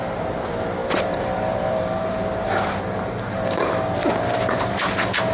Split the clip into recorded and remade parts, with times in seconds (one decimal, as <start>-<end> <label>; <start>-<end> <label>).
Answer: 0.0-0.8 recorded; 0.8-3.7 remade; 3.7-5.3 recorded